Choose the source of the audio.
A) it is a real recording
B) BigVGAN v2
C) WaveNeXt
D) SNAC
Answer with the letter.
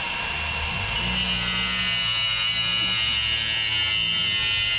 A